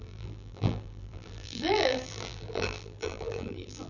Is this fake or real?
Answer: fake